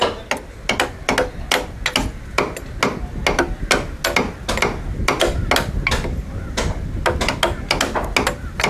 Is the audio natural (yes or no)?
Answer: yes